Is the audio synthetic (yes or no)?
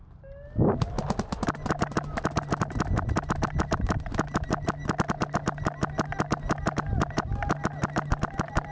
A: no